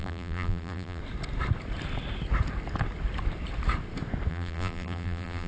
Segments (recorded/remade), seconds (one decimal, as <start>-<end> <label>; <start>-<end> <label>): 0.0-1.0 remade; 1.0-4.3 recorded; 4.3-5.5 remade